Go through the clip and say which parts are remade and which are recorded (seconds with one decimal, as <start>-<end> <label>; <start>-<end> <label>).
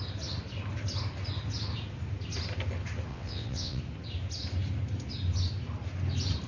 0.0-3.1 recorded; 3.1-3.8 remade; 3.8-6.5 recorded